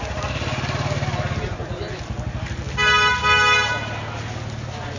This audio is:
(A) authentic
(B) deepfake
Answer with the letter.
A